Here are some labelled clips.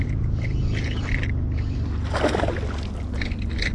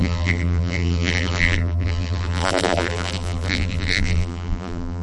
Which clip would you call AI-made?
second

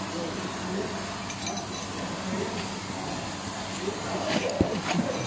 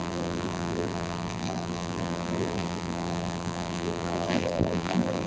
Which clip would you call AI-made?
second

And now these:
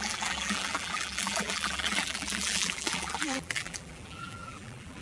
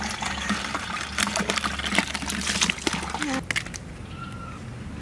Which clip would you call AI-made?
first